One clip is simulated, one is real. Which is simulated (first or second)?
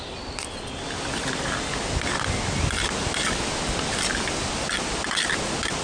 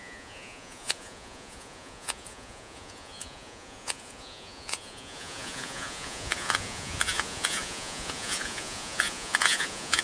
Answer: second